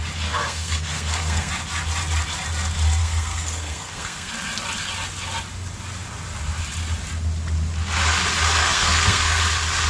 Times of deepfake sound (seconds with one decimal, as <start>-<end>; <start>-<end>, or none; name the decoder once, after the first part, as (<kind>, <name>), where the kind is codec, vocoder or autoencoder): 0.4-1.5 (codec, SNAC); 3.0-4.3; 8.6-9.4